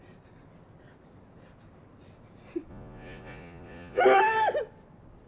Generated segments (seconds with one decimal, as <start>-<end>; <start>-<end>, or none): 2.7-4.0